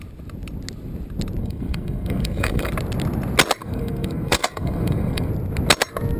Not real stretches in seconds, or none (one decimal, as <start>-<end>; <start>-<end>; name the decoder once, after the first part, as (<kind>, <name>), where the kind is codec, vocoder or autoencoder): 1.4-2.7 (codec, SNAC); 3.6-5.3